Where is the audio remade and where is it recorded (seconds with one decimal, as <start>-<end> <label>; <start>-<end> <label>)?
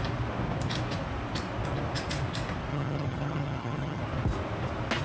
0.0-2.7 recorded; 2.7-4.0 remade; 4.0-5.0 recorded